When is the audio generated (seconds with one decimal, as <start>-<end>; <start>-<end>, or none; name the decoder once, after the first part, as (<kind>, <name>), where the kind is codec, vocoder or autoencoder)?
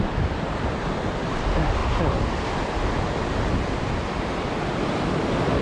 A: none